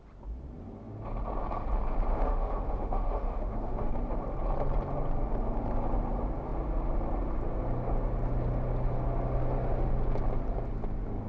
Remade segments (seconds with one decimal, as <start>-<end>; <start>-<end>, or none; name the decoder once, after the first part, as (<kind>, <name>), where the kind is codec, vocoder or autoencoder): 2.1-3.9 (autoencoder, DAC-VAE)